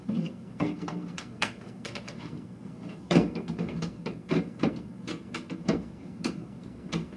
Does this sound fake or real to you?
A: fake